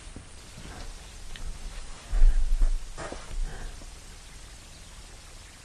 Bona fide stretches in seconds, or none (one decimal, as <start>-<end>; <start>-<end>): 0.0-5.6

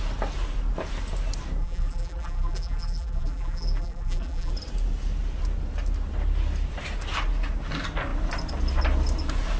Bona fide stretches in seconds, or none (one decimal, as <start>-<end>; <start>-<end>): 0.0-1.6; 4.5-9.6

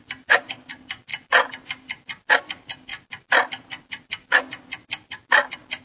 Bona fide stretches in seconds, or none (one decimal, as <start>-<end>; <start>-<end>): 0.0-5.8

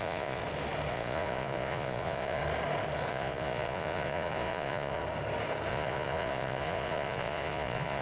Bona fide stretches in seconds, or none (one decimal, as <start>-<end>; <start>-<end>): 0.4-0.9; 2.4-3.1; 5.0-5.7

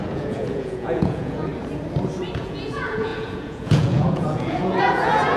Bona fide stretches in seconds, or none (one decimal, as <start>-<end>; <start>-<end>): 1.5-2.4